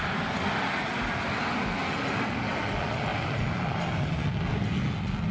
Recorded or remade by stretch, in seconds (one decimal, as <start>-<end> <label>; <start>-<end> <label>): 0.0-3.1 recorded; 3.1-4.1 remade; 4.1-5.3 recorded